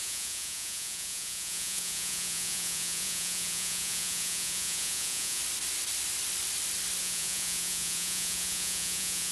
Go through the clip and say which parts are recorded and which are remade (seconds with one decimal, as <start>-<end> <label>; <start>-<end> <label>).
0.0-5.4 remade; 5.4-7.0 recorded; 7.0-9.3 remade